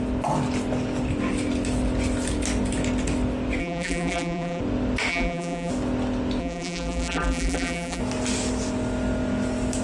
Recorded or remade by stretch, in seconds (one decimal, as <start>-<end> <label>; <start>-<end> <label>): 0.0-3.6 recorded; 3.6-4.6 remade; 4.6-5.1 recorded; 5.1-5.7 remade; 5.7-6.4 recorded; 6.4-8.0 remade; 8.0-9.8 recorded